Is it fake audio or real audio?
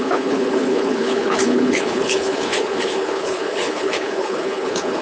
fake